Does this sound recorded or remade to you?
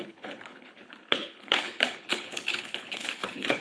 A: remade